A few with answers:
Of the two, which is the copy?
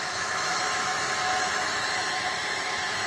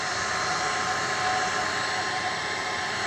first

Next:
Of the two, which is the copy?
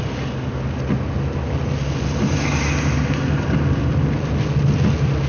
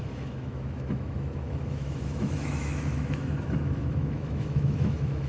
second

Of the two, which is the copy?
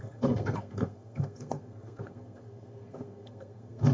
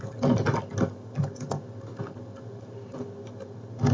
first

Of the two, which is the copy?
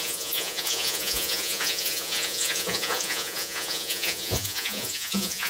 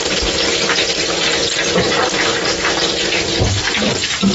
first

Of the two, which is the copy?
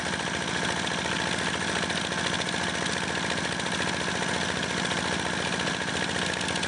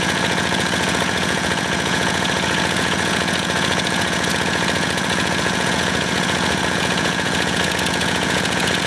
second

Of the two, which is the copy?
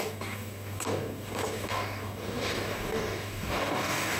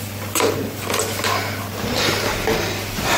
first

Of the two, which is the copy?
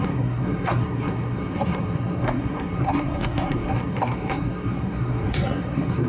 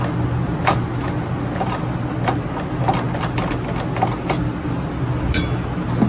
first